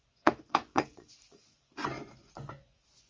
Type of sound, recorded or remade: remade